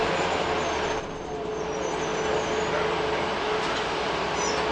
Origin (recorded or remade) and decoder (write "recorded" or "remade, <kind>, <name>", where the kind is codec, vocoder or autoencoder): recorded